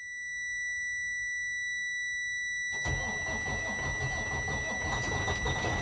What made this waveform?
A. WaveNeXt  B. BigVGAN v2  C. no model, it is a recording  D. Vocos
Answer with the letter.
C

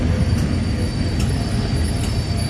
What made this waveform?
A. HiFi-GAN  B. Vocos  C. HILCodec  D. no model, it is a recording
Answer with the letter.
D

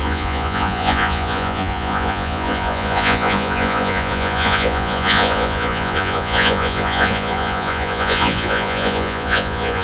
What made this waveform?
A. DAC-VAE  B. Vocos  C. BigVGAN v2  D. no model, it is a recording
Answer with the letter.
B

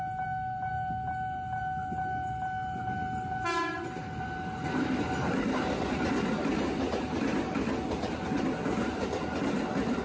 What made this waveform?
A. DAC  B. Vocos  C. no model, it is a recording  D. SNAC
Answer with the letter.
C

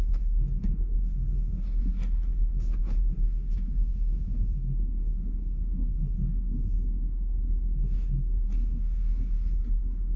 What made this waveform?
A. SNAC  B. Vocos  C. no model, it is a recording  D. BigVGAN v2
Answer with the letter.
A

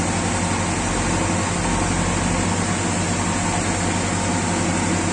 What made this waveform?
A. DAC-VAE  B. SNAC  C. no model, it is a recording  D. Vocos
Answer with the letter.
C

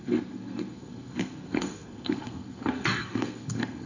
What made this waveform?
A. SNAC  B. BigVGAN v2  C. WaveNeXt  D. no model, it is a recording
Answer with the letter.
A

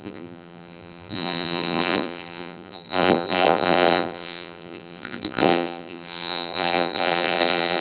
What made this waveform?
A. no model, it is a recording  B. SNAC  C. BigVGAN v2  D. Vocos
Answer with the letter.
C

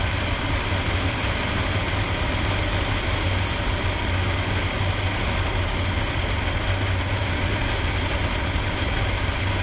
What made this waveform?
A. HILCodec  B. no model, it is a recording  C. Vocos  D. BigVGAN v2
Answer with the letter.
B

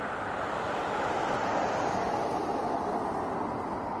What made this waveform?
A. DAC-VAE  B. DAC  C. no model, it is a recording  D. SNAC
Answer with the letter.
C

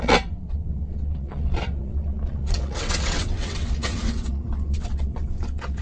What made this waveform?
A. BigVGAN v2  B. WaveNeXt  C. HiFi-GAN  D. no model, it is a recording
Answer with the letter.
B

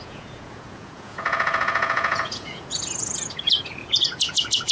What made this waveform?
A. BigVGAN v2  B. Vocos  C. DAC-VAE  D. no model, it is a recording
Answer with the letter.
B